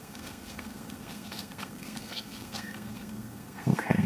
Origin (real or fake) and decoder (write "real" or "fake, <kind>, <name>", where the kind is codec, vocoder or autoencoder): fake, codec, SNAC